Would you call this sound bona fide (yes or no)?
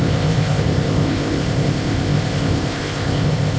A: no